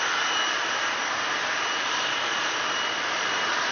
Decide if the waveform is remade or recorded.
recorded